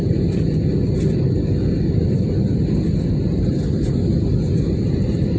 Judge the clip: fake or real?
real